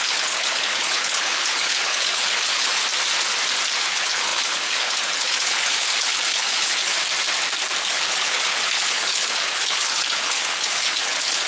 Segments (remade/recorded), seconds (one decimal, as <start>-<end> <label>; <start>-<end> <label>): 0.0-2.8 remade; 2.8-3.8 recorded; 3.8-6.9 remade; 6.9-7.8 recorded; 7.8-11.5 remade